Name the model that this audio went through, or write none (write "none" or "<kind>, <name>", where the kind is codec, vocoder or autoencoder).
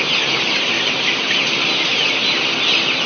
none